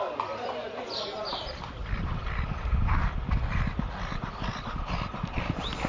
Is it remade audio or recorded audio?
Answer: recorded